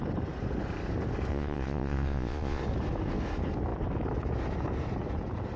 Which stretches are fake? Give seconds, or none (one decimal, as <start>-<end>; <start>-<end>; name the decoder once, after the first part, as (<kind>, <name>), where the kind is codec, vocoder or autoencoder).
1.3-2.6 (vocoder, Vocos)